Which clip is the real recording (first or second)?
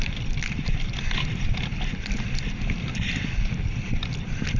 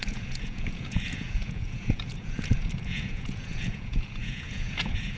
first